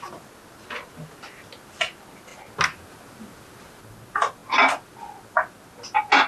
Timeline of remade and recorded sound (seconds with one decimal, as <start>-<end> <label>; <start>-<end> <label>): 0.0-6.3 recorded